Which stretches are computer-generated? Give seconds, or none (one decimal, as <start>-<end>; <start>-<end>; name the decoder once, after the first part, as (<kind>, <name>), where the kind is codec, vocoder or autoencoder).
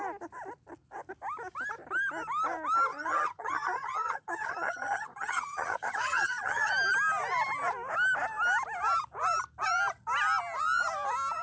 2.9-6.7 (vocoder, HiFi-GAN)